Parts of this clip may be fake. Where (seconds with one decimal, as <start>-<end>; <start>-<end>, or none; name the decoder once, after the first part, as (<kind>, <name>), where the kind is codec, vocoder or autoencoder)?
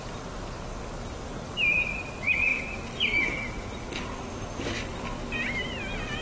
none